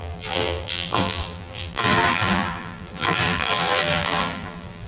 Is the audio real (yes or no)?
no